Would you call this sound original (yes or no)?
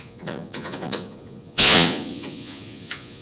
no